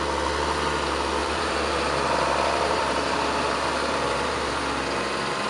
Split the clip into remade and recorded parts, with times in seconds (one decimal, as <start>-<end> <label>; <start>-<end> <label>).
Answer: 0.0-1.2 recorded; 1.2-4.5 remade; 4.5-5.5 recorded